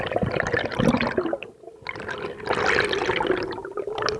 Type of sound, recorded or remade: recorded